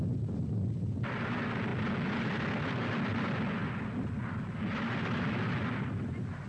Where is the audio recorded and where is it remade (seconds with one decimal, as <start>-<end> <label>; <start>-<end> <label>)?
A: 0.0-6.5 recorded